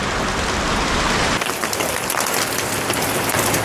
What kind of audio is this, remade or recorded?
recorded